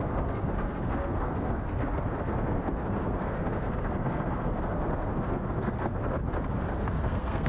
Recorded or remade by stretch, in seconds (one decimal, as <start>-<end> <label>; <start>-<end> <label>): 0.0-6.2 remade; 6.2-6.8 recorded; 6.8-7.5 remade

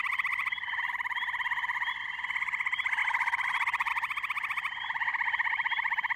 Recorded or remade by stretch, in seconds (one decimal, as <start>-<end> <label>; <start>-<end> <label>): 0.0-0.4 recorded; 0.4-0.9 remade; 0.9-3.0 recorded; 3.0-3.9 remade; 3.9-5.1 recorded; 5.1-6.2 remade